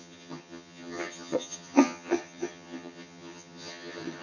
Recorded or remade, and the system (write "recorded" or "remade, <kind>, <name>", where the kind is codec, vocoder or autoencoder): remade, vocoder, HiFi-GAN